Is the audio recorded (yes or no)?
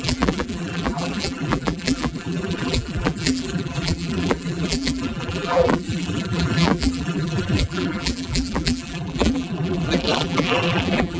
no